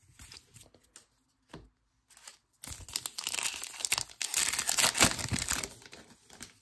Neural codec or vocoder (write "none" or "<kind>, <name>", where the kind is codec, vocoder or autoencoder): none